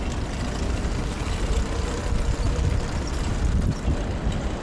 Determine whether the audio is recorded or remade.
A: recorded